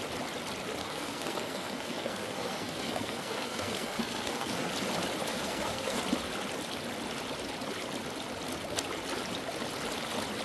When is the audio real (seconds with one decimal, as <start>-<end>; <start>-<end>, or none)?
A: 0.0-0.8; 4.7-5.3; 6.0-10.4